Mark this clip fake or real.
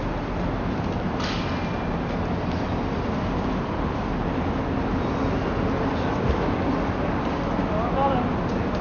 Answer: real